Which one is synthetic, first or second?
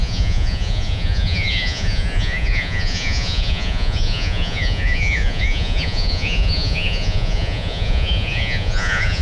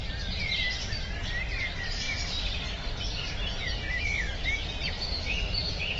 first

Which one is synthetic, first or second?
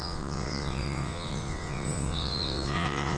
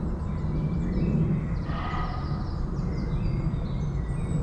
first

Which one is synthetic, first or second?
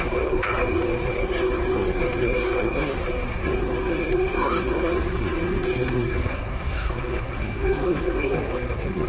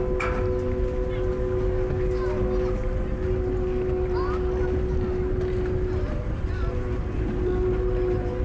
first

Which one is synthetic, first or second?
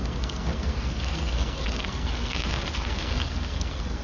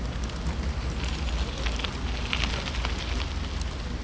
first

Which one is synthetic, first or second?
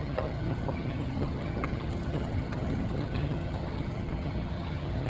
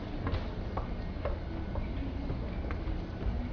first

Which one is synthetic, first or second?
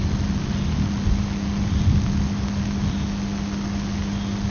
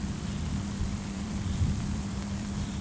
second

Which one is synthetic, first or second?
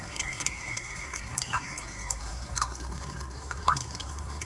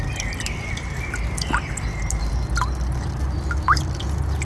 first